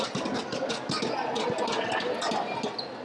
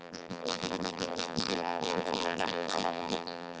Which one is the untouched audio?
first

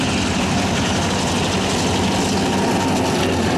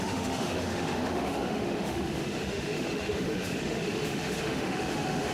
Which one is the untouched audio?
first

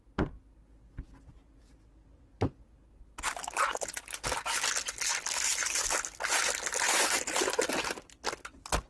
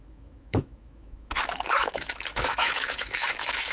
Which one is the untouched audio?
first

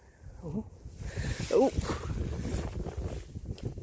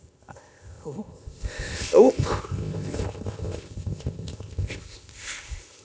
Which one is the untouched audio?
first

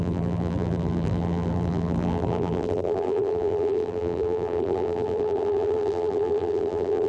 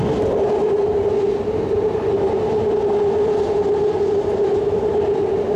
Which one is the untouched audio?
second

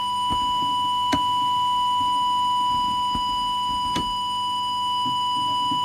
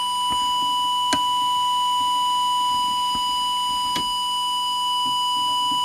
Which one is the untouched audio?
second